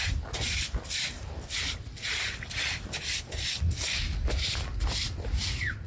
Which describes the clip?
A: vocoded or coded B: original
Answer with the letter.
B